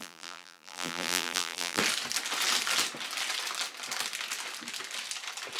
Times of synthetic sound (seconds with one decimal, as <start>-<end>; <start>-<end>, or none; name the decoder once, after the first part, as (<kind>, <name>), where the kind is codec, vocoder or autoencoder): 0.0-1.8 (vocoder, BigVGAN v2)